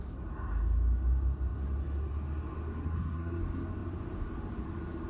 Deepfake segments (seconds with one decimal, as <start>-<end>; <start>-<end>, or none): 2.8-3.4